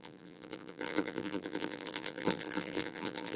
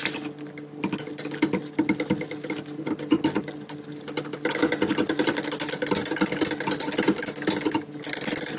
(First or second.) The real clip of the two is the second